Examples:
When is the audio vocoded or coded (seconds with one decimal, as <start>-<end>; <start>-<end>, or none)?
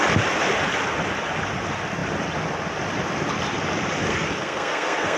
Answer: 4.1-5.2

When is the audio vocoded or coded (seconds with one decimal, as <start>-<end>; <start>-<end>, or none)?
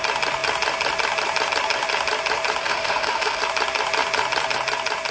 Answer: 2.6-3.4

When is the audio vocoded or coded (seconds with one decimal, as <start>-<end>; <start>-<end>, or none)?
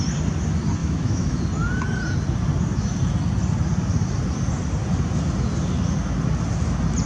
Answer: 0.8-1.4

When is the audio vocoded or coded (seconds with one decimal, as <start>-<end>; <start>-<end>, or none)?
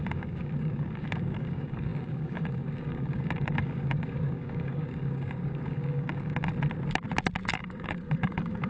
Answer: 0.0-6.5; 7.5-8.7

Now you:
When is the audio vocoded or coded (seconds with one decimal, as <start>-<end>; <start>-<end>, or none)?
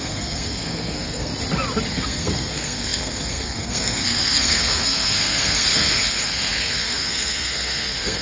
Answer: 0.0-1.3; 1.9-8.2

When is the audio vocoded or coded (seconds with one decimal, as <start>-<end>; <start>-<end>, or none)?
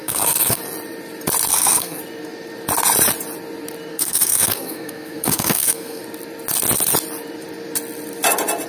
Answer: 0.0-0.6; 1.5-2.0; 3.9-6.0